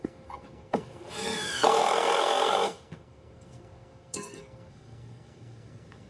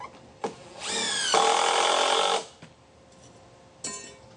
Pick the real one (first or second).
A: second